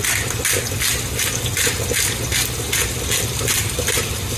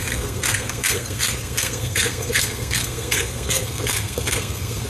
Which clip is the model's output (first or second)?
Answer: second